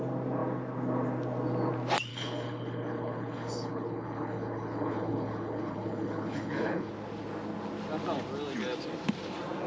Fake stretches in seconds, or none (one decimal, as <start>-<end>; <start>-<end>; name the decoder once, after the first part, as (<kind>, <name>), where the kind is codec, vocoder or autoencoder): 2.1-6.9 (codec, HILCodec)